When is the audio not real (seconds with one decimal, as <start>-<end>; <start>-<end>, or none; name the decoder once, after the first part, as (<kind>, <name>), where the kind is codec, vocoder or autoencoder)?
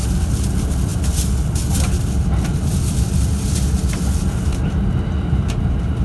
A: none